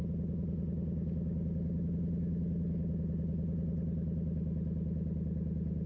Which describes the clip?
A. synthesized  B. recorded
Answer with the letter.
B